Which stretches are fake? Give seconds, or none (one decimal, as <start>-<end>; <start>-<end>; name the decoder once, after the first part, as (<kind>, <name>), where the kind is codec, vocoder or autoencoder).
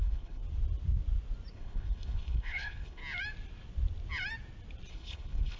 0.0-0.4 (codec, HILCodec); 1.5-3.0; 4.9-5.6